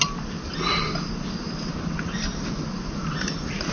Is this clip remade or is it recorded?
recorded